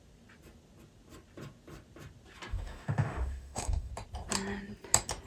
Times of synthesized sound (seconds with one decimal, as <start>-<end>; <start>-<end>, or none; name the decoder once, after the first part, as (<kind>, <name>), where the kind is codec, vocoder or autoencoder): 2.5-3.9 (autoencoder, DAC-VAE)